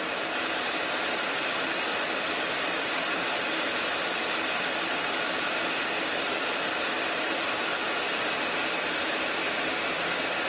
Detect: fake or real real